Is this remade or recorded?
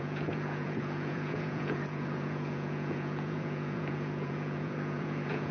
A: remade